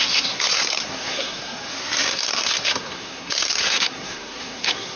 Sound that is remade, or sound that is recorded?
remade